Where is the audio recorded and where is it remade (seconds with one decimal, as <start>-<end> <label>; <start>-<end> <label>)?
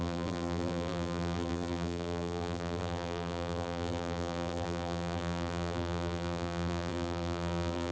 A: 0.0-7.9 remade